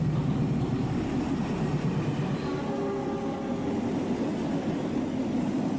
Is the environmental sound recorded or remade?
recorded